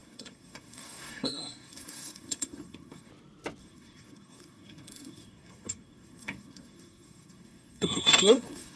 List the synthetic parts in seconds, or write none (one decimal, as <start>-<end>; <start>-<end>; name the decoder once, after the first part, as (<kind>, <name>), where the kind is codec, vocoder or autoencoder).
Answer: 0.0-3.1 (codec, SNAC); 3.6-8.8